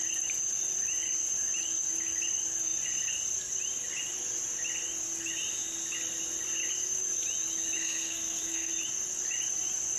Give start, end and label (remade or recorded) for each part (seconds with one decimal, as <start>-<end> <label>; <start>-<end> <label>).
0.0-7.8 recorded; 7.8-8.7 remade; 8.7-10.0 recorded